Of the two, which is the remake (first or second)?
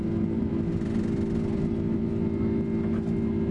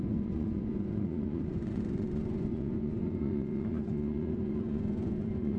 second